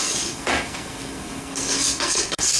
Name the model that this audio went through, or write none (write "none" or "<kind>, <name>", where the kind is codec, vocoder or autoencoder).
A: codec, SNAC